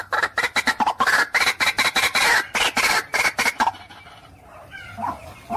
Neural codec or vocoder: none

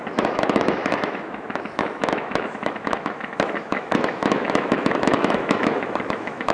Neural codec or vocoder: autoencoder, DAC-VAE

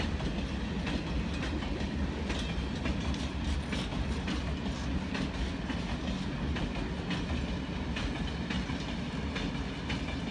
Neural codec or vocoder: none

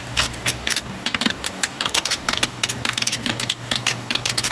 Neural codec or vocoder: codec, DAC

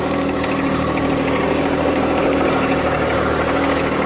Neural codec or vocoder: codec, DAC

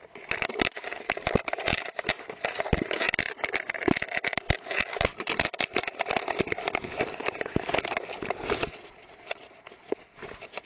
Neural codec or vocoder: none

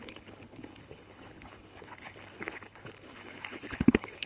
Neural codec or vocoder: codec, HILCodec